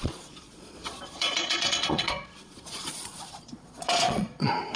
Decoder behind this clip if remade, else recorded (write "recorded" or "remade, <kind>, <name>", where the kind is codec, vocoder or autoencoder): remade, vocoder, Vocos